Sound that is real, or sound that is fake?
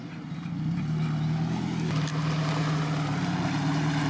real